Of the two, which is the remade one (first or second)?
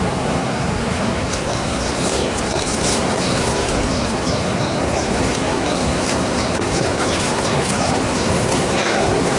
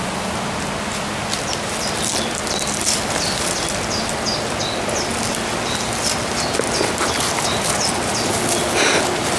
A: first